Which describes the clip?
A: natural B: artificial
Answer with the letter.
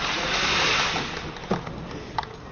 A